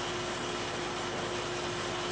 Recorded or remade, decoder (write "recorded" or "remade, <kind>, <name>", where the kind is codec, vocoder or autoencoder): recorded